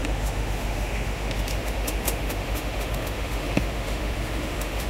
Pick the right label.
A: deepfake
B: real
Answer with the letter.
A